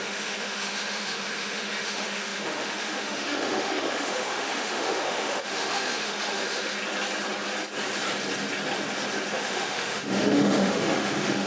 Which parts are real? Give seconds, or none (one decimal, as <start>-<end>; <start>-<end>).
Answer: 6.7-9.3